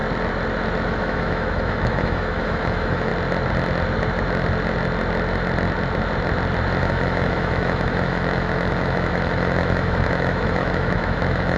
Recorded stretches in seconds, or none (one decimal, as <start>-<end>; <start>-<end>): 0.0-0.9; 3.1-6.8